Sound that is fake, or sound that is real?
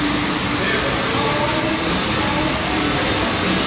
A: real